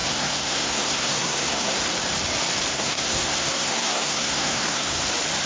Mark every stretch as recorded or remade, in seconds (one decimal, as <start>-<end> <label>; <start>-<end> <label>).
0.0-1.8 remade; 1.8-2.7 recorded; 2.7-5.0 remade; 5.0-5.5 recorded

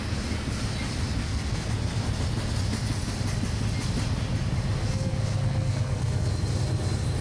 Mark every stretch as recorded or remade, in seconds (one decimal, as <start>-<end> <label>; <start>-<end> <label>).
0.0-1.2 recorded; 1.2-1.7 remade; 1.7-4.8 recorded; 4.8-6.3 remade; 6.3-7.2 recorded

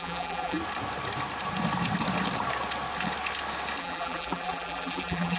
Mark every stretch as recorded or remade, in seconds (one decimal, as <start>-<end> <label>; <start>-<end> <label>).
0.0-0.6 remade; 0.6-3.8 recorded; 3.8-5.4 remade

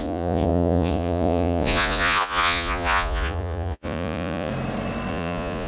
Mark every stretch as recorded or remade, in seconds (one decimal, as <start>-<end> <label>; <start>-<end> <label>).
0.0-4.5 remade; 4.5-5.1 recorded; 5.1-5.7 remade

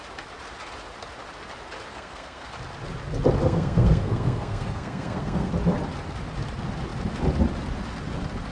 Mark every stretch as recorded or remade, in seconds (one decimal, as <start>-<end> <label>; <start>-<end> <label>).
0.0-1.9 recorded; 1.9-2.5 remade; 2.5-3.4 recorded; 3.4-5.5 remade; 5.5-8.5 recorded

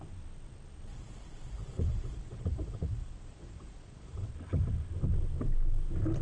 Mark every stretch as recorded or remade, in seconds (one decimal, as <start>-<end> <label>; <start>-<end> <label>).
0.0-0.9 recorded; 0.9-4.3 remade; 4.3-6.2 recorded